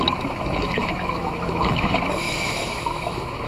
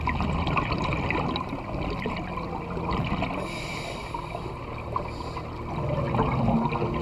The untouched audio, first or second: second